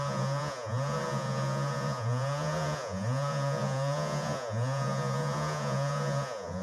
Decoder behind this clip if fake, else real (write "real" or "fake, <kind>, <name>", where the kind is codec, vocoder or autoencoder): fake, vocoder, Vocos